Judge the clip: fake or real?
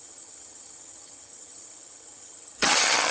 fake